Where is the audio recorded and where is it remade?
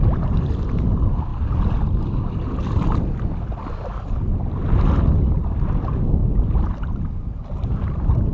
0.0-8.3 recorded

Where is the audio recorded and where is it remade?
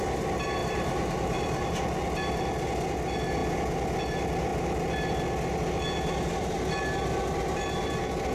0.0-0.6 recorded; 0.6-1.8 remade; 1.8-8.3 recorded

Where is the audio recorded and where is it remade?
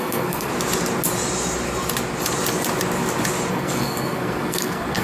0.0-0.5 remade; 0.5-3.5 recorded; 3.5-5.0 remade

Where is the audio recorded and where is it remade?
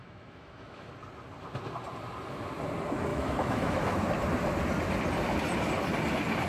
0.0-0.9 remade; 0.9-3.1 recorded; 3.1-4.0 remade; 4.0-6.5 recorded